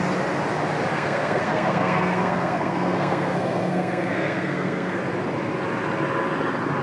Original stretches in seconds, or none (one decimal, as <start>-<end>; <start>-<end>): 0.0-0.9; 5.0-6.8